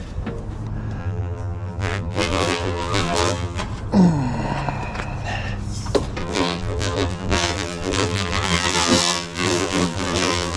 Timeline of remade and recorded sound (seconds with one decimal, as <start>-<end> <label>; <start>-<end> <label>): 0.0-1.0 recorded; 1.0-3.6 remade; 3.6-6.2 recorded; 6.2-10.6 remade